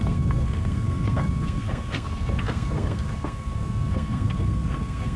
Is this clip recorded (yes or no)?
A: no